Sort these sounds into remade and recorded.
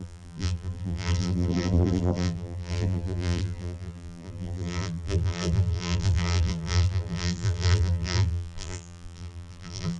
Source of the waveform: remade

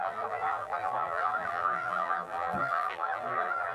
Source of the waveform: remade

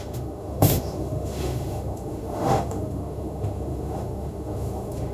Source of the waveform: remade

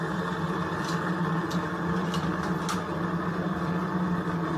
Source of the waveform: recorded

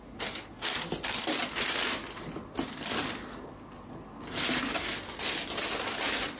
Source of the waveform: recorded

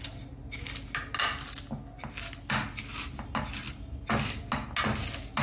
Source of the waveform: recorded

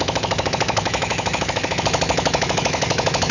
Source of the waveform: remade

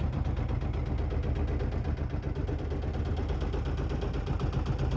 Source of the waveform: recorded